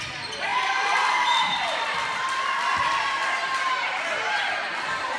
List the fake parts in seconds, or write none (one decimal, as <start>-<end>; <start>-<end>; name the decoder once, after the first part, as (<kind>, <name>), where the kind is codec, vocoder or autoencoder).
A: 0.5-3.6 (vocoder, BigVGAN v2)

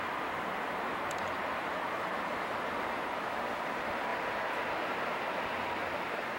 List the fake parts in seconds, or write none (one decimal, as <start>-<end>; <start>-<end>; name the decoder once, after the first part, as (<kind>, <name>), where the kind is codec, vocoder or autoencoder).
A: 0.9-3.3 (vocoder, BigVGAN v2)

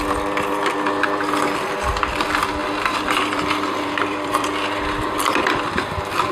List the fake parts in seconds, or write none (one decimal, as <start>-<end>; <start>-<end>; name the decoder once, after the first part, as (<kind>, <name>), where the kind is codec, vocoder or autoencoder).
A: 2.6-6.3 (vocoder, BigVGAN v2)